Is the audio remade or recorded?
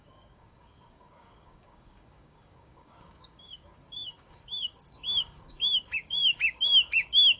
remade